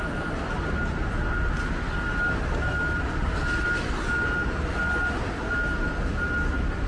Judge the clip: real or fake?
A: real